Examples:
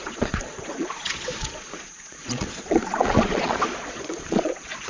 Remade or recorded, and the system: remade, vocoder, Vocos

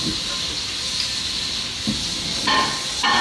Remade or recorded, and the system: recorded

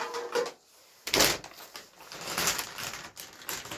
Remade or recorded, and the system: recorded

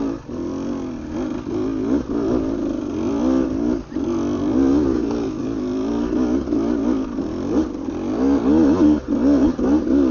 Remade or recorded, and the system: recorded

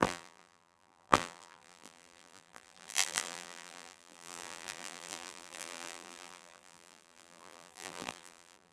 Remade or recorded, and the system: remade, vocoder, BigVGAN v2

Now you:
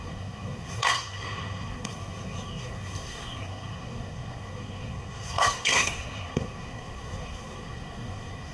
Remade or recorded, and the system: remade, codec, SNAC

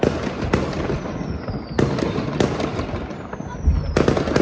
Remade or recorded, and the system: recorded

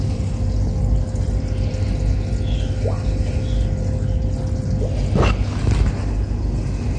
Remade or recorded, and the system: recorded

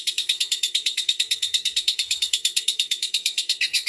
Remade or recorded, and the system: remade, codec, SNAC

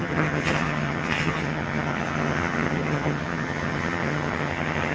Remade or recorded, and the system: remade, vocoder, HiFi-GAN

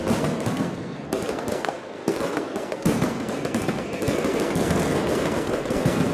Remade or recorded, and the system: remade, codec, SNAC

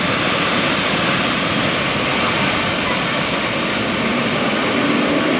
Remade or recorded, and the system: recorded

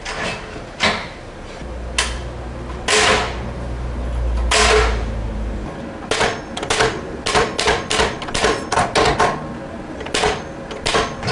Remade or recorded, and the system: recorded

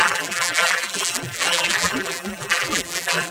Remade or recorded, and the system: remade, vocoder, BigVGAN v2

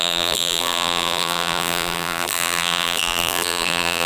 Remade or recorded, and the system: remade, vocoder, BigVGAN v2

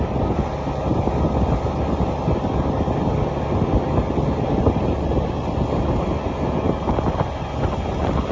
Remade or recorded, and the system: recorded